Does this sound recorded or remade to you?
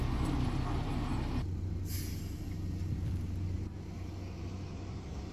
recorded